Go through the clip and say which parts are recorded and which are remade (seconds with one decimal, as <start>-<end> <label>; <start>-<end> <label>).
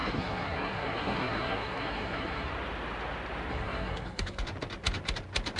0.0-2.5 remade; 2.5-3.5 recorded; 3.5-4.4 remade; 4.4-5.6 recorded